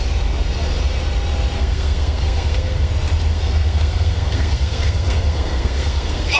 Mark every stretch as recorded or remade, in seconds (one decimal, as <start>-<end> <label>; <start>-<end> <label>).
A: 0.0-1.6 recorded; 1.6-2.9 remade; 2.9-3.3 recorded; 3.3-6.4 remade